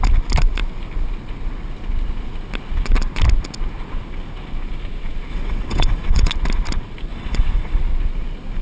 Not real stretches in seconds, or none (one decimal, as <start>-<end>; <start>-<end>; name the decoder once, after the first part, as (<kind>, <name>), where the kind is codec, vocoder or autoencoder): 5.3-6.3 (vocoder, WaveNeXt); 7.1-7.8